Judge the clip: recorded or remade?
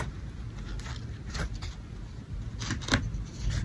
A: recorded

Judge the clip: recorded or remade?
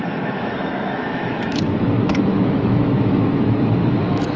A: remade